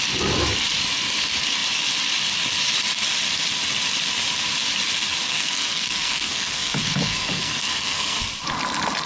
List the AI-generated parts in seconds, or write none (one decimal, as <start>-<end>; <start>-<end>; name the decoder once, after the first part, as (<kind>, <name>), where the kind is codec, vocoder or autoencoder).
5.3-8.3 (codec, SNAC)